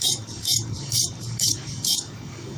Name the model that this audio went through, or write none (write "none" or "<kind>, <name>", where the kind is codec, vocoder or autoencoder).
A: codec, DAC